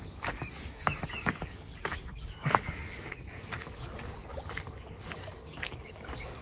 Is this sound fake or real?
fake